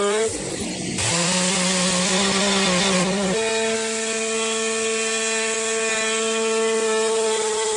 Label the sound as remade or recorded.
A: recorded